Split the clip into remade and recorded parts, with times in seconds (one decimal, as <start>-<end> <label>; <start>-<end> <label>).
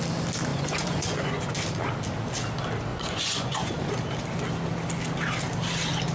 0.0-0.5 recorded; 0.5-1.5 remade; 1.5-2.9 recorded; 2.9-3.9 remade; 3.9-6.1 recorded